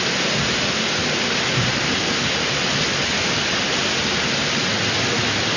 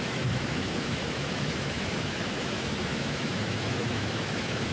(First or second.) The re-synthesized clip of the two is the second